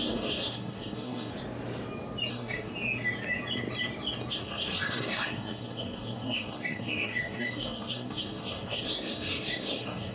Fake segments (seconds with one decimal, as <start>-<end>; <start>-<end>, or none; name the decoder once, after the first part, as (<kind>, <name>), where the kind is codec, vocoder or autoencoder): 0.0-1.3 (codec, SNAC); 2.3-2.7; 4.3-10.1